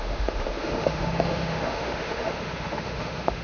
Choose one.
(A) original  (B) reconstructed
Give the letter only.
B